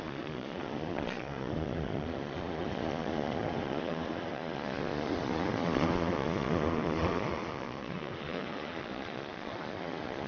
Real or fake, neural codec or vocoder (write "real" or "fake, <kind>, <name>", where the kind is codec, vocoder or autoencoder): fake, vocoder, Vocos